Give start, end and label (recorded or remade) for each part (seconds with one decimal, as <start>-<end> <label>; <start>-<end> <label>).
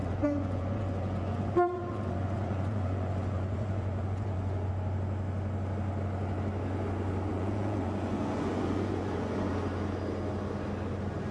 0.0-4.7 remade; 4.7-7.3 recorded; 7.3-9.5 remade; 9.5-11.3 recorded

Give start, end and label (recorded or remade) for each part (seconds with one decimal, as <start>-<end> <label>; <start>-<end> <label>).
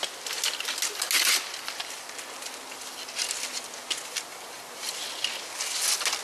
0.0-4.3 recorded; 4.3-5.0 remade; 5.0-6.2 recorded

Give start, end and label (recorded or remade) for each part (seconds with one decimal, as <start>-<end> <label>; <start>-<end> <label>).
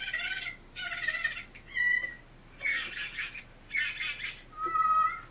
0.0-2.7 recorded; 2.7-3.4 remade; 3.4-5.3 recorded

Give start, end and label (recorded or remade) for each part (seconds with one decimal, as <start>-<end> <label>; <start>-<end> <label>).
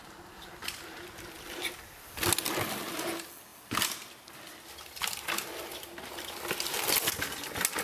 0.0-7.8 recorded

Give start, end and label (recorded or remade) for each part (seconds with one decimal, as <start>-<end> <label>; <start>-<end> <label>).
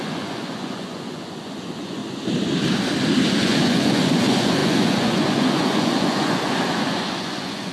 0.0-2.0 remade; 2.0-3.4 recorded; 3.4-7.7 remade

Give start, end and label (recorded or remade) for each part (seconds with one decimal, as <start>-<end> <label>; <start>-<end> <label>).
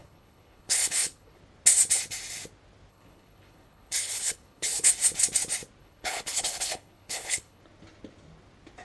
0.0-1.4 remade; 1.4-2.9 recorded; 2.9-4.9 remade; 4.9-5.8 recorded; 5.8-7.6 remade; 7.6-8.8 recorded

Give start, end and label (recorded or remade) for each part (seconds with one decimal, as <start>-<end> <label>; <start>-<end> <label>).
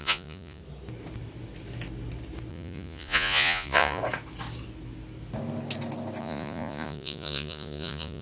0.0-0.6 remade; 0.6-2.5 recorded; 2.5-4.0 remade; 4.0-6.2 recorded; 6.2-8.2 remade